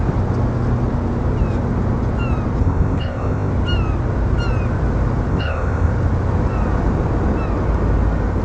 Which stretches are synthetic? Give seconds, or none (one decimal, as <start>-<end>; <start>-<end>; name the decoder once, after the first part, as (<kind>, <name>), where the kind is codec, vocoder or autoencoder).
2.6-3.5 (codec, ZipCodec); 5.3-5.9